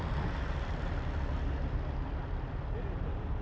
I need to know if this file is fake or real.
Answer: real